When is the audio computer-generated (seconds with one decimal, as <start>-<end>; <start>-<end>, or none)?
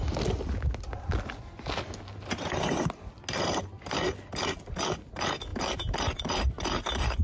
none